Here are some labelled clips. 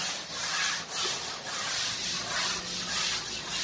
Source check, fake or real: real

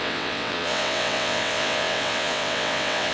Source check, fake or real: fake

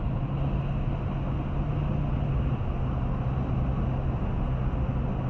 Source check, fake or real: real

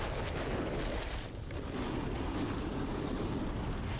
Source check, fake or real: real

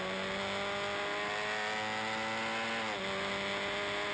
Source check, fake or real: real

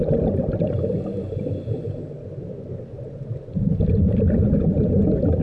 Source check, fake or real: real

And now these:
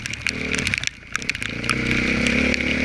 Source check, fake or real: real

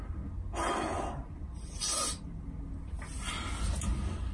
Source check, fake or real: real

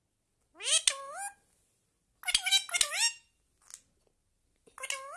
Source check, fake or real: real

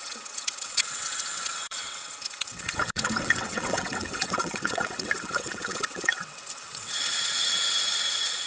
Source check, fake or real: fake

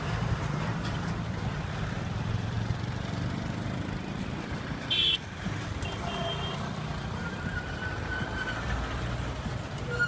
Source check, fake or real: fake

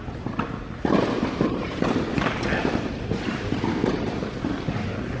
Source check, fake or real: real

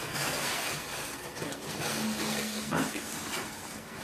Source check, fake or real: fake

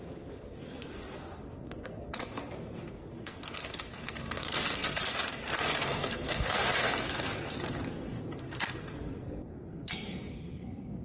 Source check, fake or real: fake